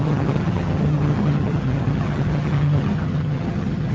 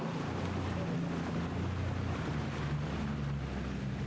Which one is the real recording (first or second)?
second